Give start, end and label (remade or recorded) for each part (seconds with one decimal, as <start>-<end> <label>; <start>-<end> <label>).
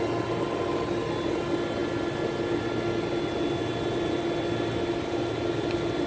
0.0-6.1 recorded